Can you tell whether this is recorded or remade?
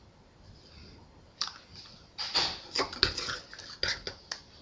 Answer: recorded